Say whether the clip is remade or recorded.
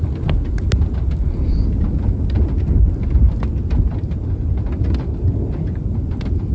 recorded